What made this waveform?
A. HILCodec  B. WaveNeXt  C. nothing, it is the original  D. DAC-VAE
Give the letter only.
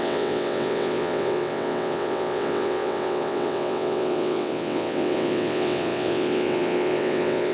B